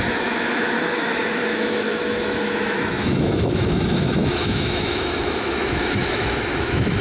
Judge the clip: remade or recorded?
remade